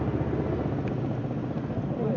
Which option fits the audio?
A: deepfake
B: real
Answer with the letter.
B